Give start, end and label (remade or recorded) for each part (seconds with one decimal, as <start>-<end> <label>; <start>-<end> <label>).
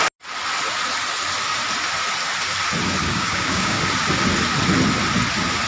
0.0-3.0 recorded; 3.0-3.8 remade; 3.8-5.7 recorded